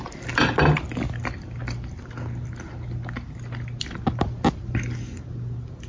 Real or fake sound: real